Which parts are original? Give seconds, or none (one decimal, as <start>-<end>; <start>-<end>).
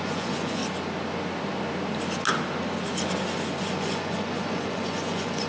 0.6-3.6